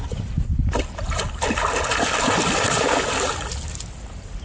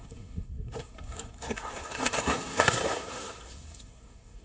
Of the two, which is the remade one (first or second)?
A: second